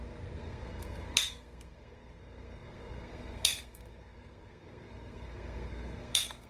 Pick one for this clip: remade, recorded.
remade